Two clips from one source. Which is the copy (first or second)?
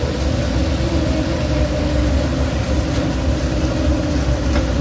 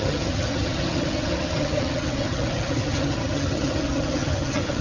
second